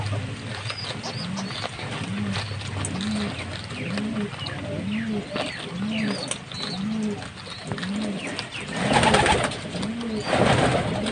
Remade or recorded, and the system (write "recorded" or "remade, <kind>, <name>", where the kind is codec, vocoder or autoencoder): recorded